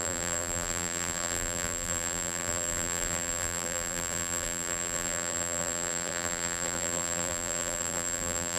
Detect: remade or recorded remade